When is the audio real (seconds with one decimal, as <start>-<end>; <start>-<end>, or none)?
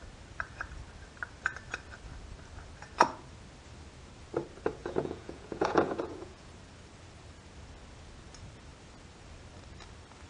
0.0-4.8; 6.5-10.3